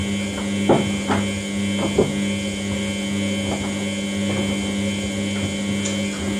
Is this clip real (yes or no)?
yes